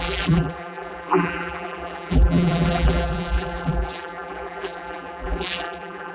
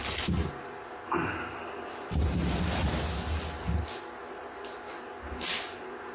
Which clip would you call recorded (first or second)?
second